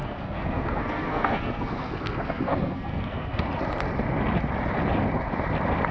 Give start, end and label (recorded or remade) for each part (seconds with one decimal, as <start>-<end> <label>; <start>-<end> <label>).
0.0-3.5 remade; 3.5-5.9 recorded

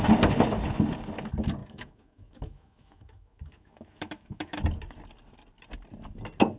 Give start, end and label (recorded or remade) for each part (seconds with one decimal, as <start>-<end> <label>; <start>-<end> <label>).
0.0-1.6 recorded; 1.6-4.6 remade; 4.6-6.6 recorded

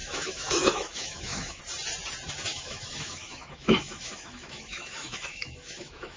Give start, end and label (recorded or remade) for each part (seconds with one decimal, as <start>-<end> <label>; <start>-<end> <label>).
0.0-1.6 remade; 1.6-2.5 recorded; 2.5-6.2 remade

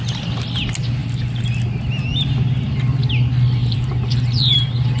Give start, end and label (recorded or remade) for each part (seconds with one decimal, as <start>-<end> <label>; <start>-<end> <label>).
0.0-1.0 recorded; 1.0-1.5 remade; 1.5-3.6 recorded; 3.6-5.0 remade

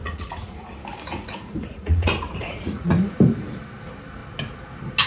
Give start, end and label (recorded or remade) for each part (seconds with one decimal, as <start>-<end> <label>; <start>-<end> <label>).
0.0-0.7 remade; 0.7-1.1 recorded; 1.1-3.1 remade; 3.1-5.1 recorded

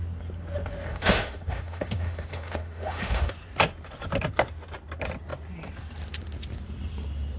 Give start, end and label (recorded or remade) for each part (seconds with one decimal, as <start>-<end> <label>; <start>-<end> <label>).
0.0-0.9 recorded; 0.9-3.3 remade; 3.3-7.4 recorded

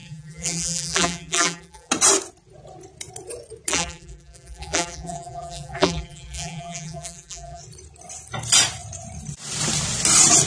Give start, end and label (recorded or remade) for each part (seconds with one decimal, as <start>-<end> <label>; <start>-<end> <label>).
0.0-1.9 remade; 1.9-3.7 recorded; 3.7-7.6 remade; 7.6-10.5 recorded